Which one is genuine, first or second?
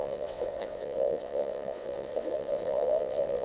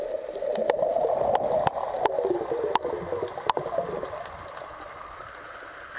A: second